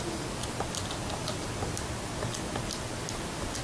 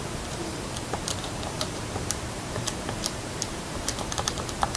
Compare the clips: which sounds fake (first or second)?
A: second